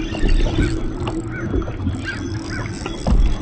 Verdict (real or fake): real